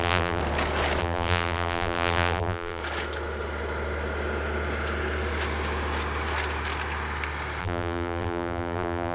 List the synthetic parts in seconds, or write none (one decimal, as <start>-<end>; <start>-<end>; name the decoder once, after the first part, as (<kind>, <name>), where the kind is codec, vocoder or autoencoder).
0.0-0.4 (vocoder, BigVGAN v2); 1.0-2.8; 7.6-9.1